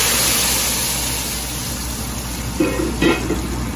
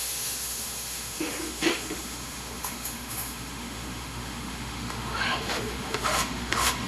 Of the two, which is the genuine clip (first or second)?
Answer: first